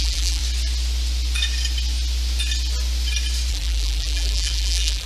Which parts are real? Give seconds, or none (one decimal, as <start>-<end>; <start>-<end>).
0.4-3.5